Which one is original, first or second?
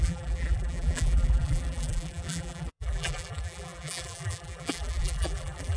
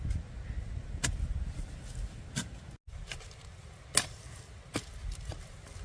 second